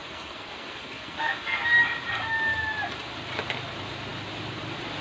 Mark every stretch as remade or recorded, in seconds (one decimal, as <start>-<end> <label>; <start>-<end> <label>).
0.0-1.8 remade; 1.8-5.0 recorded